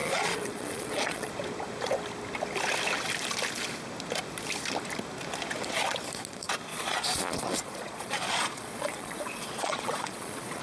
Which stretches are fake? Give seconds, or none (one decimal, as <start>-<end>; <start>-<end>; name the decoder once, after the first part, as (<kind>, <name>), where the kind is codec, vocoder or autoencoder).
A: 0.0-1.3 (vocoder, Vocos); 6.7-10.6